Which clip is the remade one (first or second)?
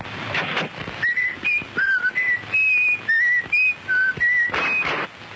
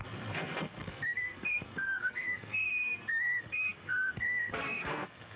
second